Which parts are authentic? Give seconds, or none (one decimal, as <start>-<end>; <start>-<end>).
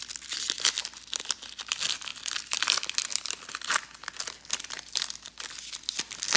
0.0-6.4